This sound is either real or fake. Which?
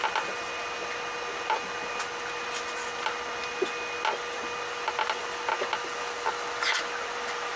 real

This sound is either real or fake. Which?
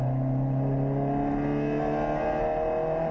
real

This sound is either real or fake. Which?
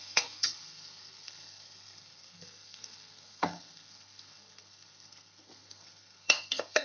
fake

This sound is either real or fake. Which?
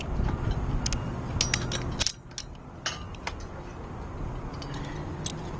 real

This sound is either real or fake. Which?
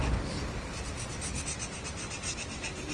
real